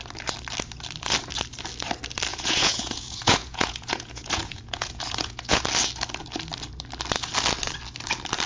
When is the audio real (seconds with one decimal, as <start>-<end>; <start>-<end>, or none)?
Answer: 0.0-2.3; 5.6-8.5